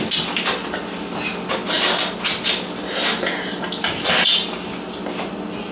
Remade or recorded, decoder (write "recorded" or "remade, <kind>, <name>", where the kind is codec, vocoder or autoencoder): recorded